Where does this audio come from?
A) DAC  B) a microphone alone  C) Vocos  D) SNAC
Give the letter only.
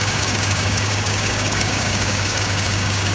A